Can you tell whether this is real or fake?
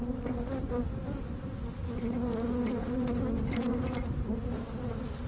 real